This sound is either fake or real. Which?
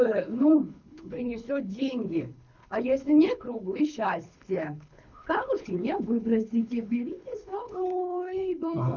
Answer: fake